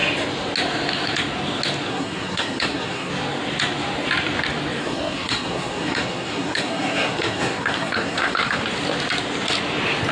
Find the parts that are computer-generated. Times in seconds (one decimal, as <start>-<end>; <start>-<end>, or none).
1.9-3.1; 4.8-8.6